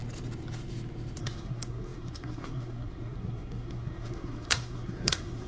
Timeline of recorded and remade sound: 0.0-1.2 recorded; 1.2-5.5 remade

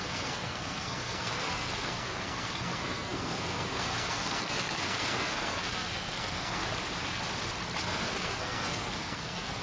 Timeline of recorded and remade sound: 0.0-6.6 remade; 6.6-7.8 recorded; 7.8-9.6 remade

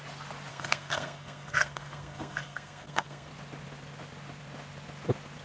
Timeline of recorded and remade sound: 0.0-0.5 recorded; 0.5-3.3 remade; 3.3-5.4 recorded